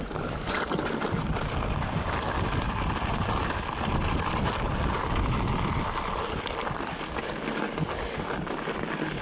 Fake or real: real